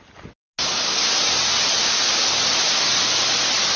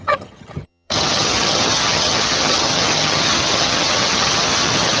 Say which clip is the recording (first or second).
first